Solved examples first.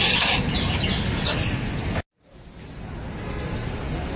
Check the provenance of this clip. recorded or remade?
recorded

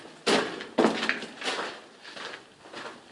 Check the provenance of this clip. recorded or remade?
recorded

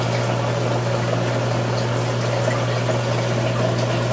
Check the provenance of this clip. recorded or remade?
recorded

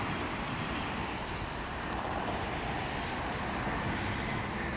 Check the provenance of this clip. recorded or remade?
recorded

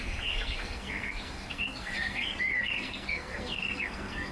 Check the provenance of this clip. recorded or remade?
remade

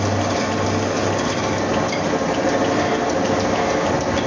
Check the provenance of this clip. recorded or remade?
recorded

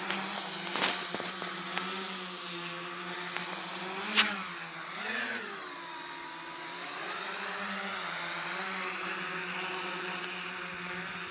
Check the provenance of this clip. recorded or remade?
recorded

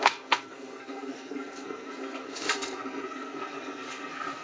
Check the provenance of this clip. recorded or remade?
remade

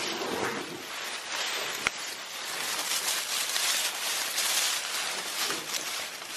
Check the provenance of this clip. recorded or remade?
recorded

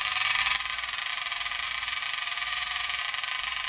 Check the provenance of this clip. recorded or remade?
recorded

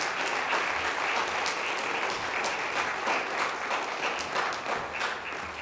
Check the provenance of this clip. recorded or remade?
recorded